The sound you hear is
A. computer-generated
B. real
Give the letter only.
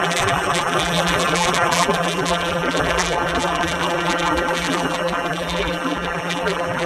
A